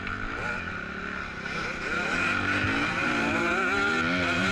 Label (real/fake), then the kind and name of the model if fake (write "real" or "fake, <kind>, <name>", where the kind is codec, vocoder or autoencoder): real